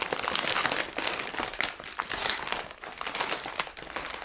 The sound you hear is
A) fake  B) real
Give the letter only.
B